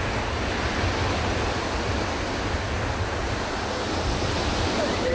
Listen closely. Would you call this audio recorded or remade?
recorded